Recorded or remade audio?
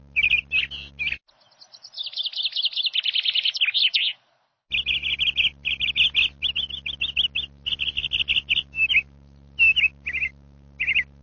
recorded